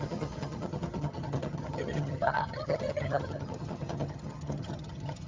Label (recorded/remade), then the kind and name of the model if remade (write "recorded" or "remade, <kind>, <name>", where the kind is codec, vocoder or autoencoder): remade, vocoder, HiFi-GAN